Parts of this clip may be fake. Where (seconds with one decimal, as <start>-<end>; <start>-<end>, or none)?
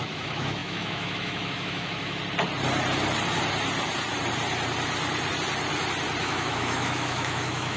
0.0-2.2; 6.2-7.8